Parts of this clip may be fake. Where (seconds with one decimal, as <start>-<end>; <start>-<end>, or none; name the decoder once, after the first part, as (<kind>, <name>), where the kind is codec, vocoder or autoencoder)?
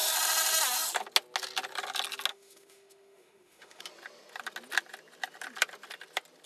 2.3-3.8 (autoencoder, DAC-VAE)